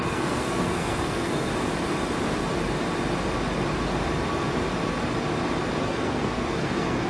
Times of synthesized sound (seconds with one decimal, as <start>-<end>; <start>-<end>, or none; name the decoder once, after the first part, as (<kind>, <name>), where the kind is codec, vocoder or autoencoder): 0.0-1.5 (codec, SNAC); 5.8-7.1